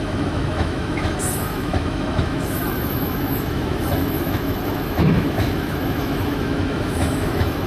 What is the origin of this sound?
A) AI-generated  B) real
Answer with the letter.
A